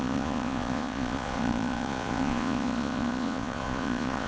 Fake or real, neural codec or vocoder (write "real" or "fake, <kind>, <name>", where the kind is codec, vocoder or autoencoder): fake, vocoder, Vocos